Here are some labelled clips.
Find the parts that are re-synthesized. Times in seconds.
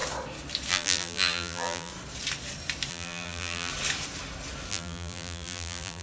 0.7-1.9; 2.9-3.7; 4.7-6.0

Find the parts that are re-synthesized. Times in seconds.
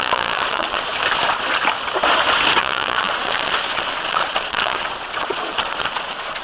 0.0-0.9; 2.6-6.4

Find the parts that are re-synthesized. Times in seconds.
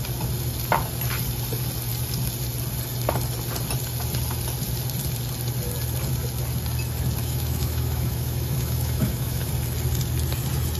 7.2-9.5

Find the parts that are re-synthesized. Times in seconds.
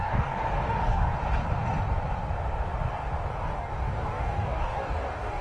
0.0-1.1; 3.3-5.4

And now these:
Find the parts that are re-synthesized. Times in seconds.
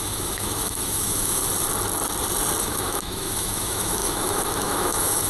0.0-1.4; 2.6-5.3